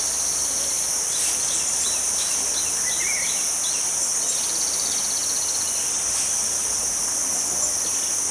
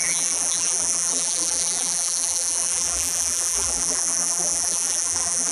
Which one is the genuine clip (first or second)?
first